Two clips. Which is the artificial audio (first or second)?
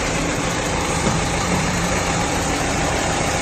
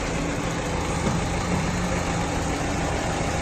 first